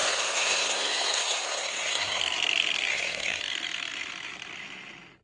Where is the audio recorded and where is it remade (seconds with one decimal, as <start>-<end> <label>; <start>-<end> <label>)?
0.0-2.2 remade; 2.2-2.9 recorded; 2.9-3.4 remade; 3.4-5.2 recorded